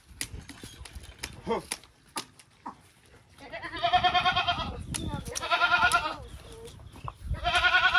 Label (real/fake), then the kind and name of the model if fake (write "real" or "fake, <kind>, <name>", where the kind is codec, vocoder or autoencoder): real